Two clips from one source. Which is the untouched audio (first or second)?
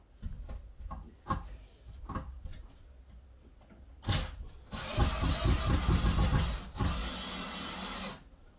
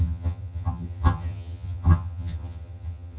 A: first